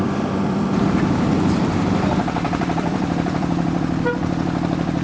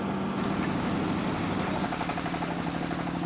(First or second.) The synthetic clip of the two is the first